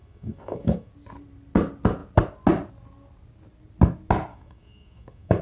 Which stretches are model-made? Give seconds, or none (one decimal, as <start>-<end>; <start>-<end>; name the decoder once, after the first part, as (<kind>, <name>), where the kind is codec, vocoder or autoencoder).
0.0-0.9 (autoencoder, DAC-VAE); 4.3-5.4

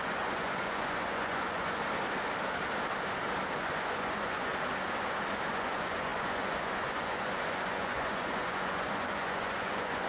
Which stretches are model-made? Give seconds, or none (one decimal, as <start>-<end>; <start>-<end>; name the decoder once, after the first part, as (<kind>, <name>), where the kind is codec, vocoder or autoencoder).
0.0-1.8 (vocoder, Vocos); 3.6-4.5; 5.5-10.1